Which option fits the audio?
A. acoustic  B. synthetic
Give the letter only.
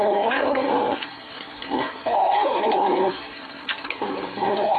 B